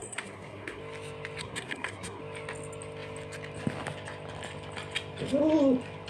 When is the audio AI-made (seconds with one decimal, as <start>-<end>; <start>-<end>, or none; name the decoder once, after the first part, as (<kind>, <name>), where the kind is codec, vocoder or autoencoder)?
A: 0.0-0.8 (codec, SNAC); 1.4-2.2